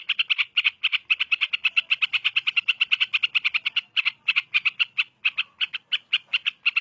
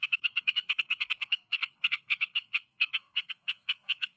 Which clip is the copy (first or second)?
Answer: second